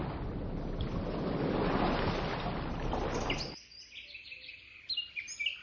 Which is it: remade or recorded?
recorded